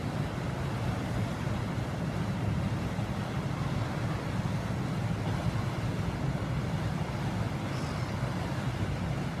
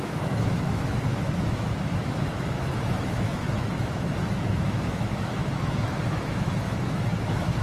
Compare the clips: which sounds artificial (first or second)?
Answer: second